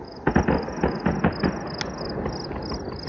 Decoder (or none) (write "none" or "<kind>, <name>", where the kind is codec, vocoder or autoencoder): none